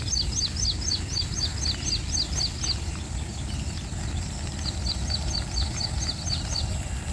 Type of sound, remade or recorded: recorded